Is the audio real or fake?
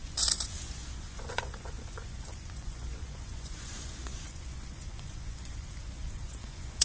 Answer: fake